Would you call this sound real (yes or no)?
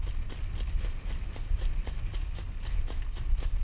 yes